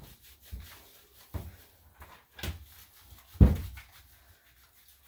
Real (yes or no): yes